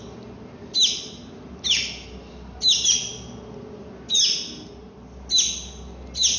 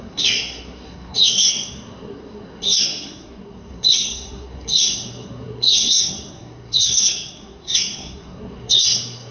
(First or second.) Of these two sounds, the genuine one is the first